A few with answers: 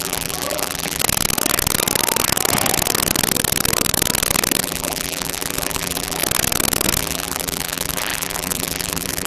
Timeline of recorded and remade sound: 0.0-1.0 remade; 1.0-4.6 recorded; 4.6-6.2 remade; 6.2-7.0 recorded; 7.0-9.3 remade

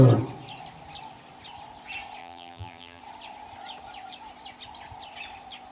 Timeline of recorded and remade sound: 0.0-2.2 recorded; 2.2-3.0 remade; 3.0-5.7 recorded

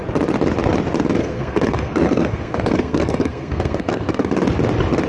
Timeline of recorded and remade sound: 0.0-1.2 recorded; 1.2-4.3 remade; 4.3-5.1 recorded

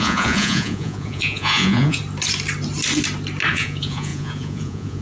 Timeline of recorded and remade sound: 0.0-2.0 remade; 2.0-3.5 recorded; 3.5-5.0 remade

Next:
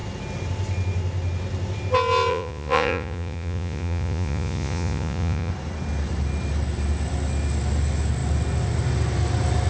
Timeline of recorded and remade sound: 0.0-2.3 recorded; 2.3-5.5 remade; 5.5-9.7 recorded

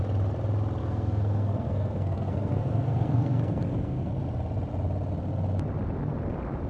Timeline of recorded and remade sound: 0.0-0.8 recorded; 0.8-4.1 remade; 4.1-6.7 recorded

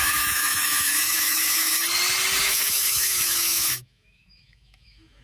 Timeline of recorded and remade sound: 0.0-1.8 remade; 1.8-2.4 recorded; 2.4-5.2 remade

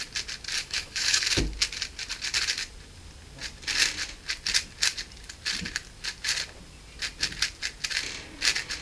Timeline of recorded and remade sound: 0.0-0.6 recorded; 0.6-1.2 remade; 1.2-8.8 recorded